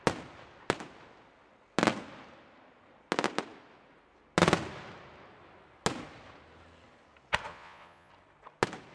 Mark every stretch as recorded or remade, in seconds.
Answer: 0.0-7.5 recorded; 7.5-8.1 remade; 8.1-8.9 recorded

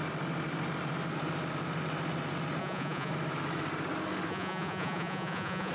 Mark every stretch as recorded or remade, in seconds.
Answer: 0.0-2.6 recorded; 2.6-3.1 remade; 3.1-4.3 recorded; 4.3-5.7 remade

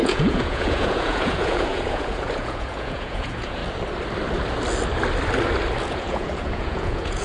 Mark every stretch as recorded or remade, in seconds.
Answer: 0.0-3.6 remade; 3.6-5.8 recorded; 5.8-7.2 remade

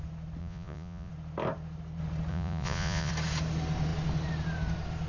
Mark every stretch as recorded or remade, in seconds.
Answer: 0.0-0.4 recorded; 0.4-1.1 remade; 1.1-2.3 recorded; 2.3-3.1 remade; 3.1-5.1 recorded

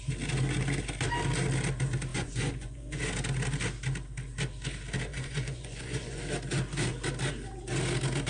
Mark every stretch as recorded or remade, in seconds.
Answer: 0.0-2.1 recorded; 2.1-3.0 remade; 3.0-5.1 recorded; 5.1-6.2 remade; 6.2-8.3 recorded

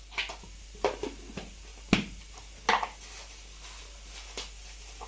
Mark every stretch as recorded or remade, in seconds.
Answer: 0.0-5.1 recorded